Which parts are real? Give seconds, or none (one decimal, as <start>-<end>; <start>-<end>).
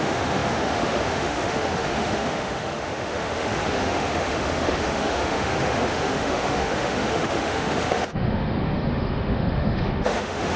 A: none